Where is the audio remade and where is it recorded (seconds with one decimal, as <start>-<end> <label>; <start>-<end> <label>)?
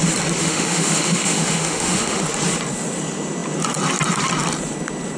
0.0-0.4 recorded; 0.4-2.2 remade; 2.2-5.2 recorded